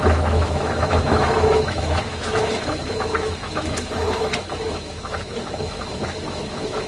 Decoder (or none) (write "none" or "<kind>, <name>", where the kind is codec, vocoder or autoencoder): autoencoder, DAC-VAE